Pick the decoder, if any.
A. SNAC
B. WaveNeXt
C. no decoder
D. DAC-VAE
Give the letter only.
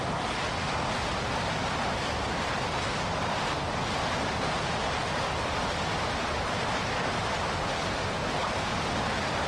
C